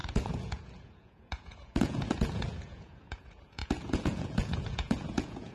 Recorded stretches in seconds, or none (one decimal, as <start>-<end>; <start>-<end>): none